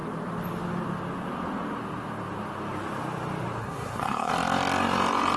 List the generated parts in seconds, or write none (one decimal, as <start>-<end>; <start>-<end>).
3.6-4.3